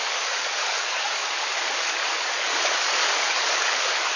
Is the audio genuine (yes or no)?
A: no